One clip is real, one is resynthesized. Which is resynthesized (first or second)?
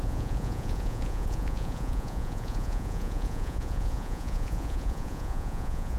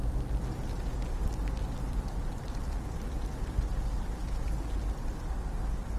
first